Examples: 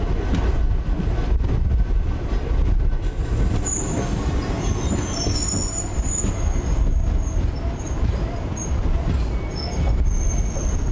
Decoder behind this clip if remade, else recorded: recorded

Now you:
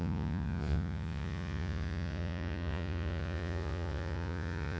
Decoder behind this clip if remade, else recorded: remade, vocoder, Vocos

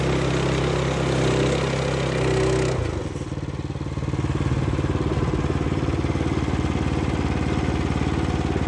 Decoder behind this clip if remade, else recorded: recorded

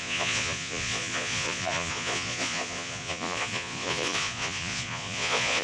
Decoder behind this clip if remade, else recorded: remade, vocoder, Vocos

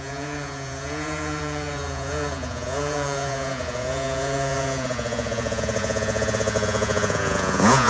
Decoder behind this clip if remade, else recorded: remade, vocoder, Vocos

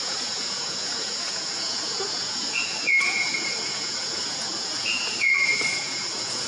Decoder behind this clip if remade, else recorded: remade, vocoder, Vocos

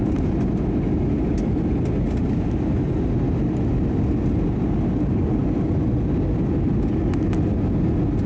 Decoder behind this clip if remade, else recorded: recorded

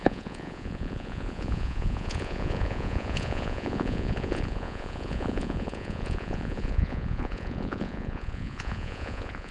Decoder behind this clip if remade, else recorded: remade, vocoder, Vocos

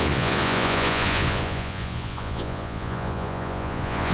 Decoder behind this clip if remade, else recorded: remade, vocoder, Vocos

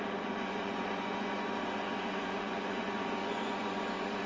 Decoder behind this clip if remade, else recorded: remade, vocoder, Vocos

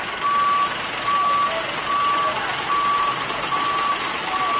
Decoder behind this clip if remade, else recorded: recorded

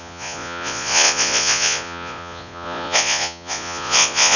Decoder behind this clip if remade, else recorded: remade, vocoder, Vocos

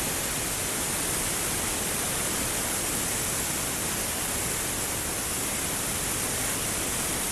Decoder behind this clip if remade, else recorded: recorded